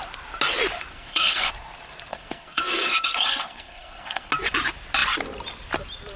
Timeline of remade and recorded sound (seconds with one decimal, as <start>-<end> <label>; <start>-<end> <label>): 0.0-0.9 recorded; 0.9-1.5 remade; 1.5-2.1 recorded; 2.1-4.3 remade; 4.3-6.2 recorded